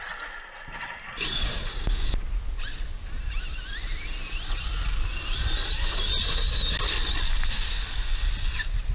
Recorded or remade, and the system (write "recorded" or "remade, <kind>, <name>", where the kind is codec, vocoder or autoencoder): recorded